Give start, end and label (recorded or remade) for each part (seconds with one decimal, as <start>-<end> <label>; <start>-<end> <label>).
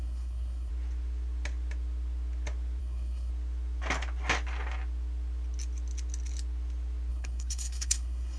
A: 0.0-0.7 remade; 0.7-2.8 recorded; 2.8-3.3 remade; 3.3-7.1 recorded; 7.1-8.4 remade